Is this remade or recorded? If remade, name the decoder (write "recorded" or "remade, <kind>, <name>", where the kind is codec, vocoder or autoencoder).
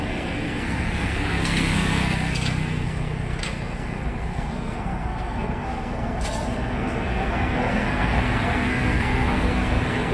remade, codec, SNAC